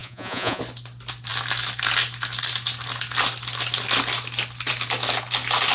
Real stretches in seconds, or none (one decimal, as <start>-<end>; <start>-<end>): 0.6-5.7